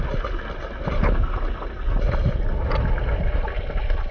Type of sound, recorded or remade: recorded